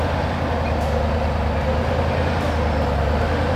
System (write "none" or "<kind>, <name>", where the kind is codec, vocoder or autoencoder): none